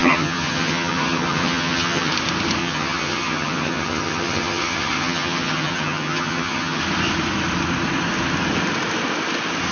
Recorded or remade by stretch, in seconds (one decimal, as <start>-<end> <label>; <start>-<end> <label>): 0.0-2.1 remade; 2.1-2.6 recorded; 2.6-6.8 remade; 6.8-9.7 recorded

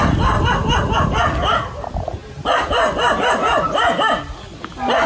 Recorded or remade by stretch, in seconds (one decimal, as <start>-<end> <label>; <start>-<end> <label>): 0.0-5.1 recorded

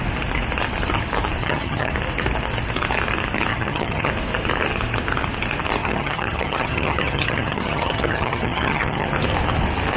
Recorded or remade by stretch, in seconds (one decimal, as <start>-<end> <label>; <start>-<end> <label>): 0.0-1.4 recorded; 1.4-1.9 remade; 1.9-3.5 recorded; 3.5-4.1 remade; 4.1-5.8 recorded; 5.8-9.1 remade; 9.1-10.0 recorded

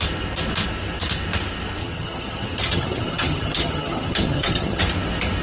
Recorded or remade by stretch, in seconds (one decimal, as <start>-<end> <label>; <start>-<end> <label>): 0.0-1.8 recorded; 1.8-4.8 remade; 4.8-5.4 recorded

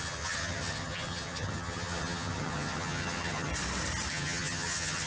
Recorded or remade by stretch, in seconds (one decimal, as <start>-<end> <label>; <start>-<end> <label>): 0.0-3.5 remade; 3.5-4.1 recorded; 4.1-5.1 remade

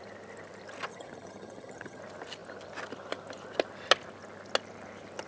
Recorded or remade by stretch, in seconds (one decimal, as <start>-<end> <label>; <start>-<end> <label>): 0.0-0.9 recorded; 0.9-2.0 remade; 2.0-5.3 recorded